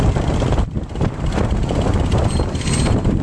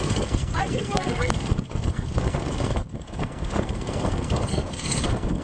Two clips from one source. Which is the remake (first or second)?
second